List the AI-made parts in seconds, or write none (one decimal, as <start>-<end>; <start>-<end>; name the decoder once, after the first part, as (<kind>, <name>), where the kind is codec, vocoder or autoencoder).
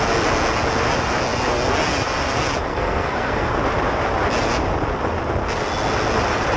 2.7-3.5 (codec, SNAC)